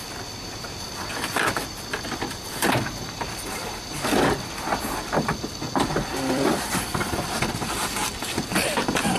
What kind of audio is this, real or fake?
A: fake